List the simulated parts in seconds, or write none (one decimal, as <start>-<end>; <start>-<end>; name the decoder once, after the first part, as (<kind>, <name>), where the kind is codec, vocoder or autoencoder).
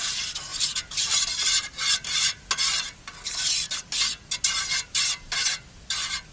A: 0.5-2.5 (vocoder, BigVGAN v2)